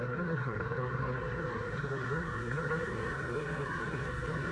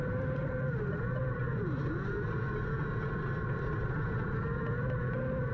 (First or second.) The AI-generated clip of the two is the first